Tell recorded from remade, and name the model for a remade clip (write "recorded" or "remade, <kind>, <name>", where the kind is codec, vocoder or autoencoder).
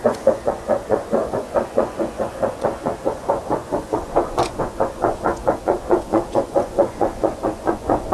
remade, vocoder, Vocos